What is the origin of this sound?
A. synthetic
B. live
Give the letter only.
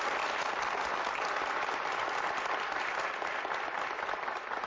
A